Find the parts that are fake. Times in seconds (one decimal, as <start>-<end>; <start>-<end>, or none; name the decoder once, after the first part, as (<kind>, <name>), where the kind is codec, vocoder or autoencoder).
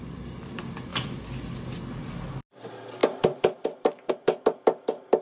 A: none